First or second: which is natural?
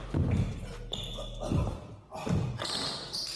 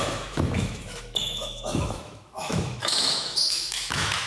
first